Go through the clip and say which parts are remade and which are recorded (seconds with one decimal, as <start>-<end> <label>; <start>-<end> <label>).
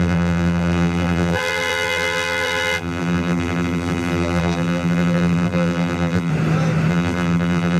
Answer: 0.0-6.3 remade; 6.3-6.9 recorded; 6.9-7.8 remade